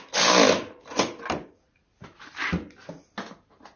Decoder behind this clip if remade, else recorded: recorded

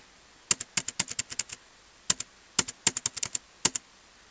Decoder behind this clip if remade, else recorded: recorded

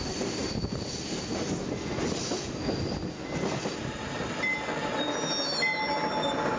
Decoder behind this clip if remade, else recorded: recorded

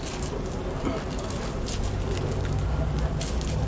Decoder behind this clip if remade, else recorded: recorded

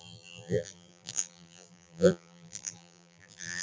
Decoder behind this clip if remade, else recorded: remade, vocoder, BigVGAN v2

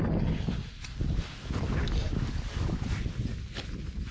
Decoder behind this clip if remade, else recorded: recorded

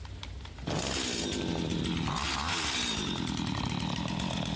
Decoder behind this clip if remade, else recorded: recorded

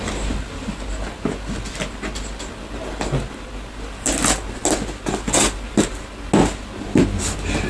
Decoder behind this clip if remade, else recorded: recorded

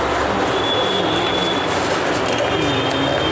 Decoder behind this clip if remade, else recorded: recorded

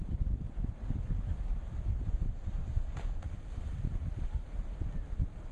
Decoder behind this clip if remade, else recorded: recorded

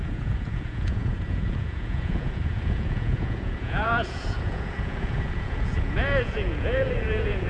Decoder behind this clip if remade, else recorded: remade, vocoder, Vocos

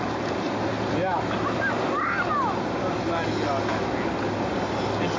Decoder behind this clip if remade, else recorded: recorded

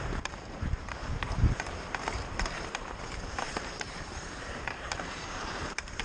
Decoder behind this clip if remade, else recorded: remade, vocoder, BigVGAN v2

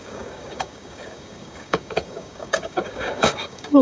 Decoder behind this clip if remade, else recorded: remade, codec, DAC